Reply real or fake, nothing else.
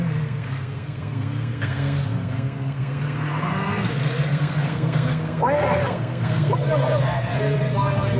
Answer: fake